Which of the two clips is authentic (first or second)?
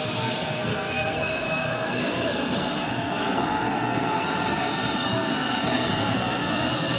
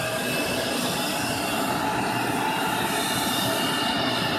second